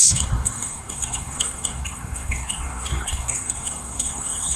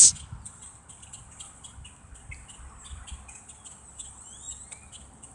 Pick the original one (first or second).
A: second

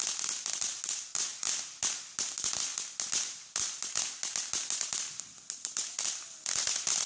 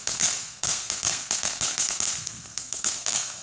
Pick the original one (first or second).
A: first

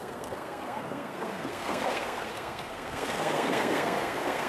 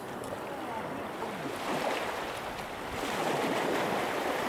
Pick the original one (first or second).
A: second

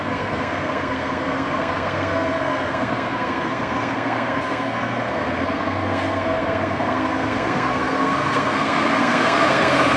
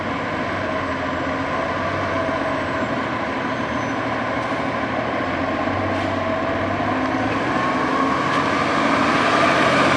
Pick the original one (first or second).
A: second